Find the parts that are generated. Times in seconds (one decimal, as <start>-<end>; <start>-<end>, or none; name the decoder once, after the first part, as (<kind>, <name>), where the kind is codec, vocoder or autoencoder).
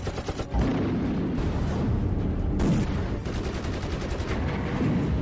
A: none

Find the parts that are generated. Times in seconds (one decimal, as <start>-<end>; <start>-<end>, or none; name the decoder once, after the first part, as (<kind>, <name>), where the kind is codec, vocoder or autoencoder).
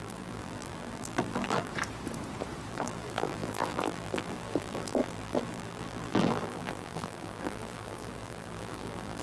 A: 0.0-1.7 (vocoder, BigVGAN v2); 2.7-9.2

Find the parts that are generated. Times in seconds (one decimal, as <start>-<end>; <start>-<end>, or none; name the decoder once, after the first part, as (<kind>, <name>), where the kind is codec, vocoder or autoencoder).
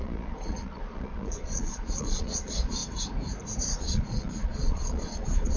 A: 0.0-2.8 (vocoder, Vocos); 3.6-5.6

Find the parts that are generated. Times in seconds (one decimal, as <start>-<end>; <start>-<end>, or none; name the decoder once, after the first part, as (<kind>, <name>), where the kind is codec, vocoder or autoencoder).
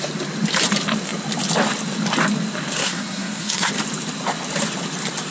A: 2.8-3.7 (codec, SNAC)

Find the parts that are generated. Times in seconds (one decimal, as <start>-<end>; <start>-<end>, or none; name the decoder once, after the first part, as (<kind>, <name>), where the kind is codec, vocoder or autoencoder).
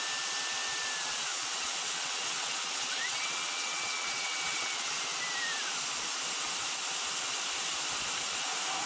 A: 1.3-5.0 (vocoder, WaveNeXt)